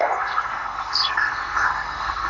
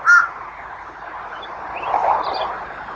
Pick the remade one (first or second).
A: first